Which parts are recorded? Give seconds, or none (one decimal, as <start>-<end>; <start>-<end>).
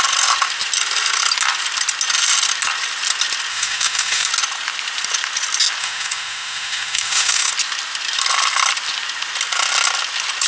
0.0-3.5; 4.3-5.8; 7.5-10.5